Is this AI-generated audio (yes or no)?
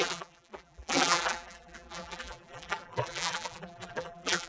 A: yes